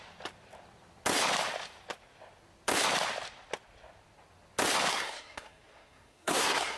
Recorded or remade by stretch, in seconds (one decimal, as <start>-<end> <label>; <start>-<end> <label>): 0.0-4.9 recorded; 4.9-6.8 remade